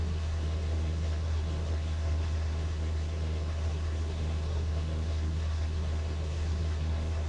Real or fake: fake